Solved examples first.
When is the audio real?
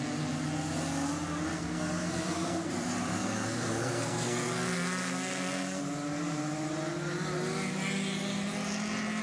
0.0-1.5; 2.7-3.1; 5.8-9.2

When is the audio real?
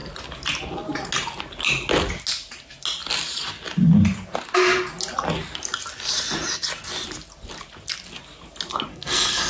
0.0-8.9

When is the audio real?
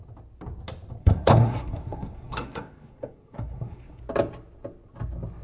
0.0-1.0; 4.0-5.4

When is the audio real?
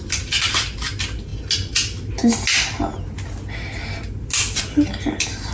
0.0-5.5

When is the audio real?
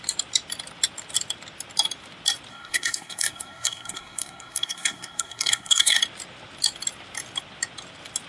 0.0-2.5; 6.0-8.3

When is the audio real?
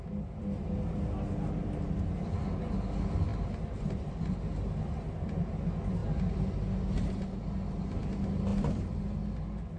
0.0-9.8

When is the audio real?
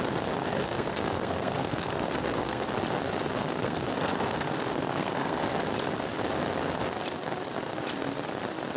0.0-0.4; 2.7-3.4; 5.4-8.8